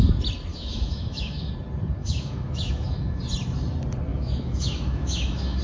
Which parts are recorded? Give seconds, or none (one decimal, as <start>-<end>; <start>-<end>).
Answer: 0.0-0.5; 1.5-2.0; 3.2-4.1